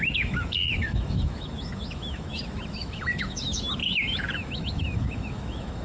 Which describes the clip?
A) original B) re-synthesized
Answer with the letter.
B